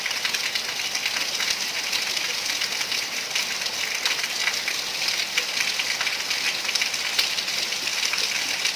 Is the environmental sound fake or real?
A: real